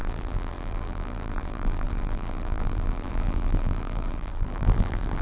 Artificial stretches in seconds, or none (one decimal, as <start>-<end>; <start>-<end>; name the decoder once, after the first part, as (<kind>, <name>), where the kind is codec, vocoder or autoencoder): 0.0-5.2 (vocoder, BigVGAN v2)